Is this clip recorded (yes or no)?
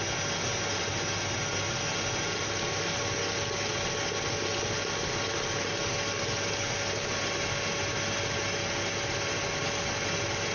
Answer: yes